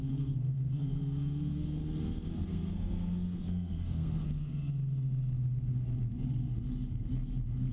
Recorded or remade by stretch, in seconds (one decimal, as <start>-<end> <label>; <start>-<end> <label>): 0.0-1.8 remade; 1.8-2.3 recorded; 2.3-4.5 remade; 4.5-7.7 recorded